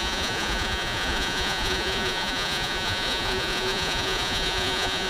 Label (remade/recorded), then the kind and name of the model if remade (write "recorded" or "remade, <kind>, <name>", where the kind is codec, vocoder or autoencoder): remade, vocoder, Vocos